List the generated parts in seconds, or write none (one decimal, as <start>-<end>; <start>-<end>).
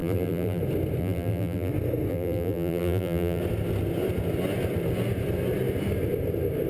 0.0-0.6; 1.0-1.7; 2.1-3.4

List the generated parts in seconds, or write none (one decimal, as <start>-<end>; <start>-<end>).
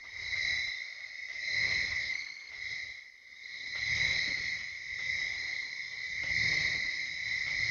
2.0-2.5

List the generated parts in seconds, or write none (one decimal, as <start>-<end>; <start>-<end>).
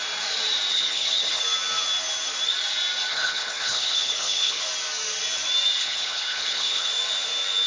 0.7-1.4; 3.1-4.6; 5.8-6.9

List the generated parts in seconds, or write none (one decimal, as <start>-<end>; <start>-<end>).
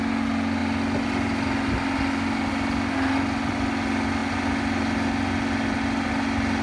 none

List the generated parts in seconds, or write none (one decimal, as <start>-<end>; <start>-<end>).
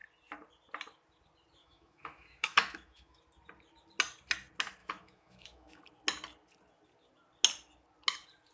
1.6-3.2; 4.8-5.8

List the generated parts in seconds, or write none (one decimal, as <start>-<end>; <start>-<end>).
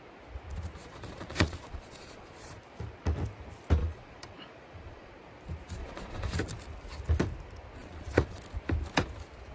0.8-2.6; 3.8-5.1; 5.8-6.4; 7.8-8.4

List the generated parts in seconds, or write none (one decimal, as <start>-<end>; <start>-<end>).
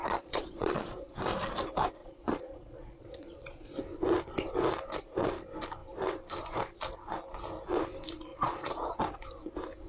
0.0-1.1; 2.0-3.7; 8.3-9.0